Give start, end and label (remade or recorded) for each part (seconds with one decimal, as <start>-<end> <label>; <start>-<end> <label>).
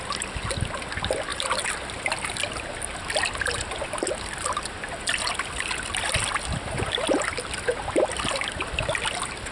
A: 0.0-9.5 recorded